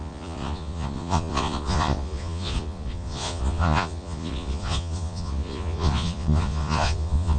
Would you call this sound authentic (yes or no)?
no